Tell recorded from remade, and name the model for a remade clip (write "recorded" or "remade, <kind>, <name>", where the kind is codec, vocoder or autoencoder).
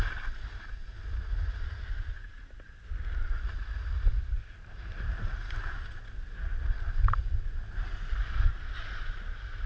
recorded